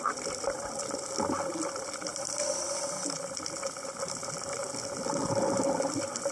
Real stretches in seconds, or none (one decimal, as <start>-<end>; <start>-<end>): none